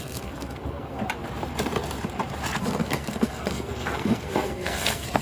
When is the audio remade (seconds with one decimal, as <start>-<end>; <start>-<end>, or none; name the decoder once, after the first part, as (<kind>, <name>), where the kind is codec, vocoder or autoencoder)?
0.0-1.0 (codec, SNAC); 2.6-5.2